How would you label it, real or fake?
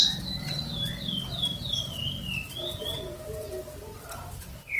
real